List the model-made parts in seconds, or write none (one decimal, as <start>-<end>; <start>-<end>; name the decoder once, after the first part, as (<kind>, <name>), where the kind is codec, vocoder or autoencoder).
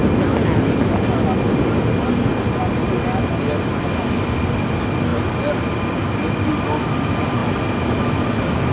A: none